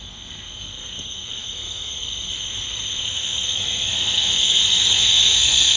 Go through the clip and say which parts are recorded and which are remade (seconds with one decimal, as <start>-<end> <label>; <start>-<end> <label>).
0.0-5.8 remade